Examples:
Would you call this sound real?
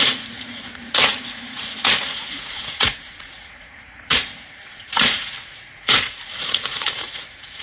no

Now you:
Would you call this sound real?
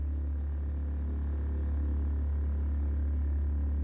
yes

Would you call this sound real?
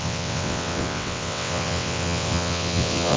no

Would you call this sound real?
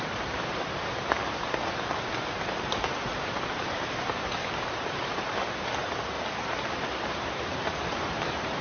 no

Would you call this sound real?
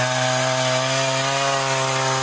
yes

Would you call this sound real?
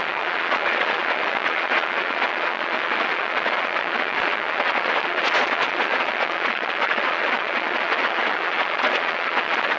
no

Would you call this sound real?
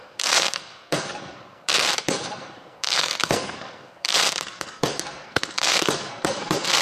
no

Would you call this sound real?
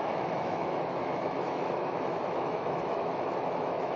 no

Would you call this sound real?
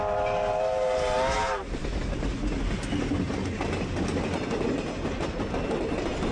yes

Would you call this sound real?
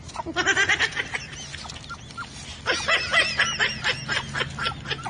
yes